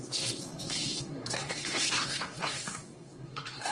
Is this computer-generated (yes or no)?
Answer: yes